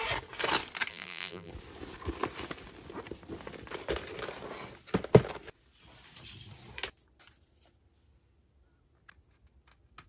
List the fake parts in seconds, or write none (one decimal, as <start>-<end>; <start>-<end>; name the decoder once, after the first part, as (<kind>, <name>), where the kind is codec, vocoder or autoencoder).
0.9-1.5 (vocoder, BigVGAN v2)